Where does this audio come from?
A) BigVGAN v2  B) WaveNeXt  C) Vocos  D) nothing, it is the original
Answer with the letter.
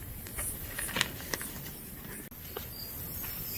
D